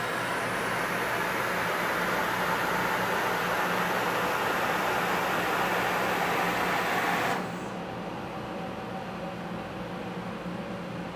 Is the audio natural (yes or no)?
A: yes